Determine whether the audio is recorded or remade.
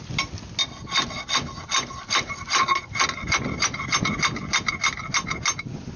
recorded